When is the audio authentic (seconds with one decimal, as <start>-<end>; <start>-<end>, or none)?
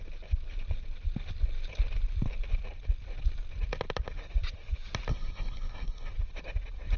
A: 0.0-5.1; 6.1-7.0